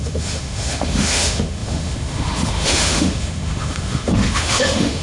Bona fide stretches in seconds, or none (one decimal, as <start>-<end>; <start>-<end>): none